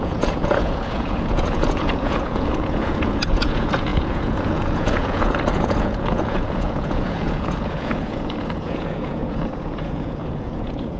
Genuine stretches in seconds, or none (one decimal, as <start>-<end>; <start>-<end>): none